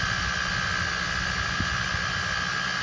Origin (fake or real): real